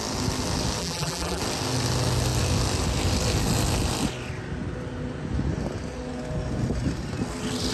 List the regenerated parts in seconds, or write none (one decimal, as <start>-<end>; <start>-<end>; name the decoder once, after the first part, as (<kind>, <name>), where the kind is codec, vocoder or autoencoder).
0.8-1.4 (vocoder, BigVGAN v2)